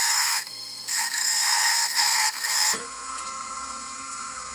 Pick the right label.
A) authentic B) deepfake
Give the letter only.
B